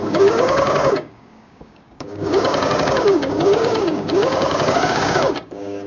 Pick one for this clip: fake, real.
fake